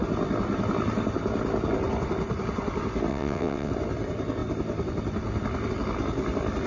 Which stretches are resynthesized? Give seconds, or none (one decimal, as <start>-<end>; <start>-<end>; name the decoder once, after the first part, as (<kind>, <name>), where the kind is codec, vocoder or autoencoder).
3.1-3.7 (vocoder, WaveNeXt)